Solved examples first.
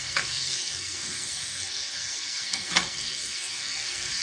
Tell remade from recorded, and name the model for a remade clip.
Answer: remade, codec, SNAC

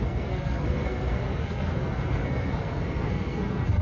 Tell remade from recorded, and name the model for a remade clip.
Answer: remade, codec, SNAC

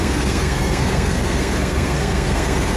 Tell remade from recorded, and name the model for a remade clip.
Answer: remade, codec, SNAC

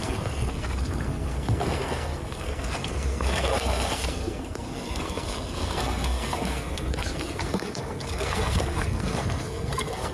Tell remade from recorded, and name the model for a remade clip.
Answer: remade, codec, SNAC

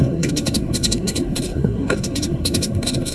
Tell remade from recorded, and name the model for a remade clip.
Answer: remade, codec, SNAC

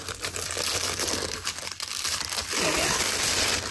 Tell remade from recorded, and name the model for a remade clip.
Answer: recorded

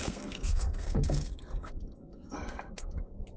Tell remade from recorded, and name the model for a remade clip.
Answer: remade, codec, SNAC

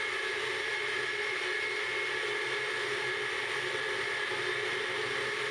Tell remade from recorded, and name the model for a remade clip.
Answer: recorded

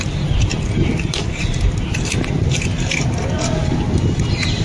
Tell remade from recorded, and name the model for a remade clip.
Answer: recorded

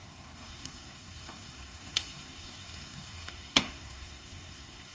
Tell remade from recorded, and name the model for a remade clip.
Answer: remade, codec, SNAC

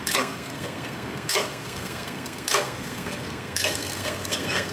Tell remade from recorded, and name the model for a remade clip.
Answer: remade, codec, SNAC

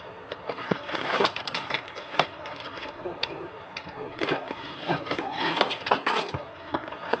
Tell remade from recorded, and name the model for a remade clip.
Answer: remade, codec, SNAC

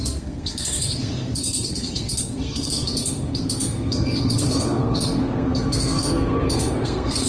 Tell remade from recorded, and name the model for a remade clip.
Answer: remade, codec, SNAC